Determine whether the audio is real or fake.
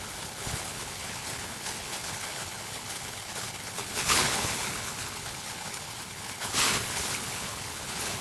fake